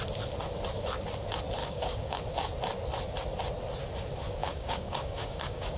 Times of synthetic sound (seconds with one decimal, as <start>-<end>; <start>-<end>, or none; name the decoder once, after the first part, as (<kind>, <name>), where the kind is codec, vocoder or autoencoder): 1.6-2.2 (codec, DAC); 4.4-5.8